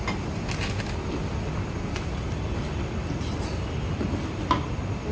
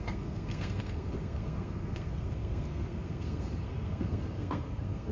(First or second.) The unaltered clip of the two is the first